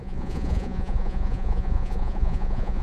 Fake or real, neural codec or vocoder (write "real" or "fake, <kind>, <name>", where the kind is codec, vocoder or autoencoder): fake, vocoder, Vocos